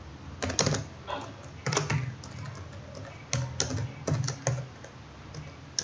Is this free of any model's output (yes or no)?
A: yes